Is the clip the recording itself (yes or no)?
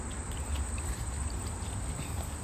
yes